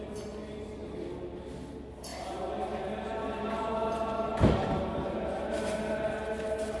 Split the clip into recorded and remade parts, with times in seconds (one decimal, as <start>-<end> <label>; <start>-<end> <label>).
0.0-6.8 recorded